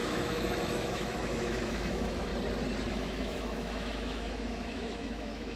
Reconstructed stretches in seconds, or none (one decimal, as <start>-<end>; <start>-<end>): 0.0-2.3; 2.9-5.6